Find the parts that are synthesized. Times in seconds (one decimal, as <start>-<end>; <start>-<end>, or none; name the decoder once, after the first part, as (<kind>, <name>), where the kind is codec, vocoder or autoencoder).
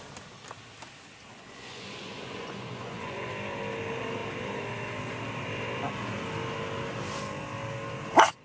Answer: 1.3-3.3 (vocoder, Vocos)